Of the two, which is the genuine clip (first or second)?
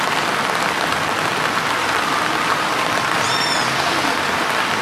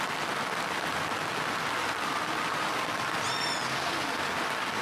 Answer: second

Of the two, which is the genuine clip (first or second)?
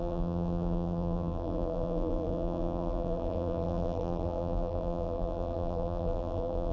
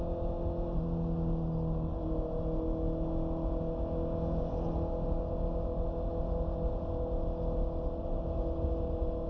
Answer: second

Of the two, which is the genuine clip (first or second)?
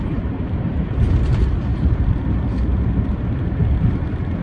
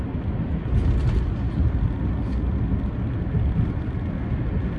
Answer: second